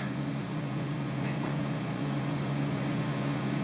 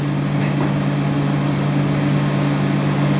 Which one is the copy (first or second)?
first